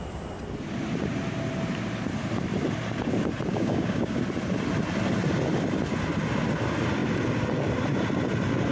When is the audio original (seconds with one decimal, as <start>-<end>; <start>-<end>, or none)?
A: 0.0-3.5; 4.2-8.7